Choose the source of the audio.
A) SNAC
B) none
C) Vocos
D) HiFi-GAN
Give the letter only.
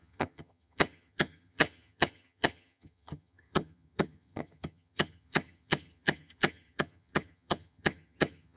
D